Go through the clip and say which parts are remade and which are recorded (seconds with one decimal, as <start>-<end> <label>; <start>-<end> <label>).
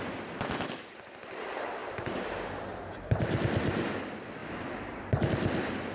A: 0.0-1.8 recorded; 1.8-3.4 remade; 3.4-5.9 recorded